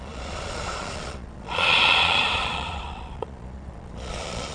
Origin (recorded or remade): remade